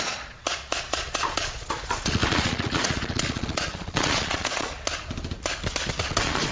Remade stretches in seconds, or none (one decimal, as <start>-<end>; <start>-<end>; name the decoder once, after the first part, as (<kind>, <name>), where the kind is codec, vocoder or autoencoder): 0.0-4.7 (vocoder, Vocos); 6.0-6.5